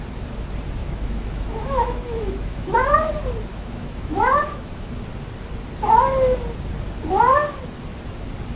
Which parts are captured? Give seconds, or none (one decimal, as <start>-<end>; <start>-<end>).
0.0-0.8; 3.1-3.5; 4.9-8.6